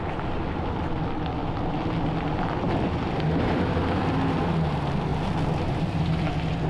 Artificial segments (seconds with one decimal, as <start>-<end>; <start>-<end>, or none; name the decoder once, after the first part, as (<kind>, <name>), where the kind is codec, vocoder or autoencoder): 1.4-3.7 (vocoder, BigVGAN v2); 5.1-6.3